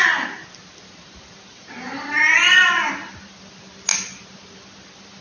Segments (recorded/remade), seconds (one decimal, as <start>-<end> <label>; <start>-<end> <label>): 0.0-2.3 recorded; 2.3-2.9 remade; 2.9-5.2 recorded